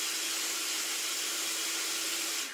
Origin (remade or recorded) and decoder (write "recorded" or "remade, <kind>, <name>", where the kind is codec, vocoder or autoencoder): recorded